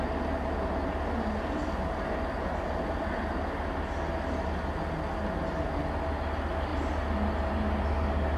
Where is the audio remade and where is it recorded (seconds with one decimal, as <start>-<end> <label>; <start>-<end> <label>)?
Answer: 0.0-8.4 recorded